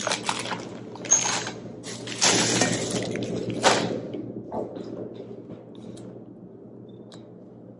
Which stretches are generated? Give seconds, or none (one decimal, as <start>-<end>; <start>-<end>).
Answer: none